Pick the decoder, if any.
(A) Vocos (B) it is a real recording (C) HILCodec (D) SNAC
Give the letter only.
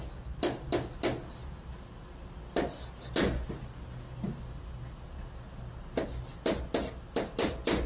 B